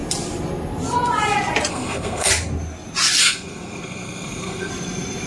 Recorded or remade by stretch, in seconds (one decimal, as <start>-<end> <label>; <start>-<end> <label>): 0.0-1.7 recorded; 1.7-2.3 remade; 2.3-3.2 recorded; 3.2-4.7 remade; 4.7-5.3 recorded